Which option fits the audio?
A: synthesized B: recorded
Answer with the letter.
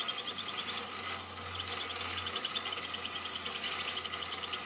B